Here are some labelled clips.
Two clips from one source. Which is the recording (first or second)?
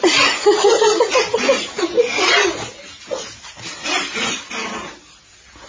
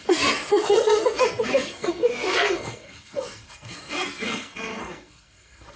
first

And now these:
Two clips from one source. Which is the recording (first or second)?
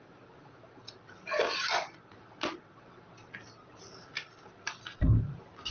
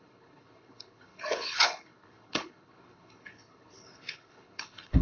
first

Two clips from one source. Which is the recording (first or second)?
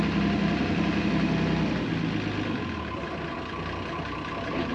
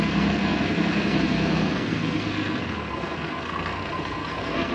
first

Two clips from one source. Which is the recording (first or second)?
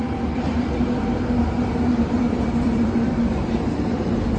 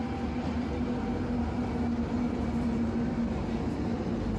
second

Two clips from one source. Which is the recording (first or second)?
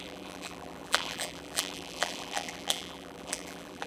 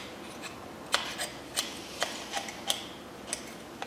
second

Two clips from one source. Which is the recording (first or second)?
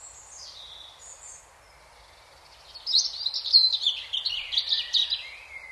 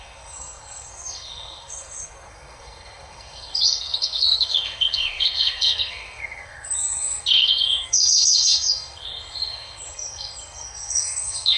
first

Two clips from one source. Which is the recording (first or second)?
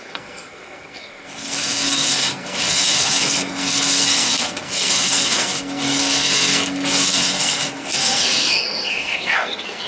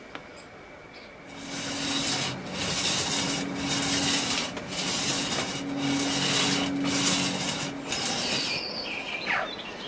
second